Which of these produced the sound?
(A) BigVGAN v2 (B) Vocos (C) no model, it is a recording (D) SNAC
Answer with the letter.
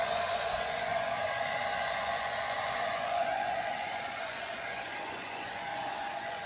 B